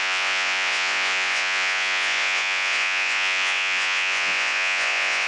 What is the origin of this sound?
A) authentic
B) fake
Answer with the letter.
B